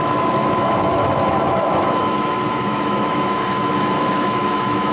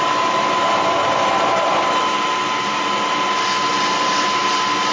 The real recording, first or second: second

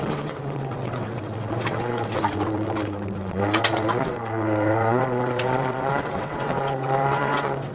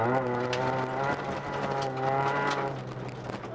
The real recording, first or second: second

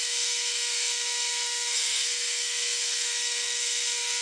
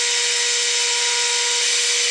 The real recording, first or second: second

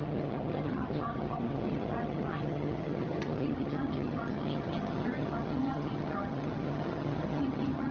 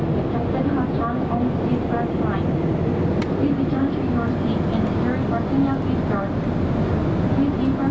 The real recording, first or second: second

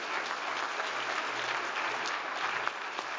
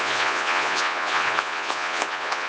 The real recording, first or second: first